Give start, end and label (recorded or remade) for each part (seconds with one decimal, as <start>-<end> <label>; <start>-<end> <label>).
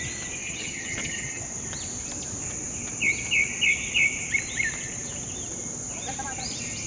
0.0-0.4 recorded; 0.4-1.4 remade; 1.4-6.9 recorded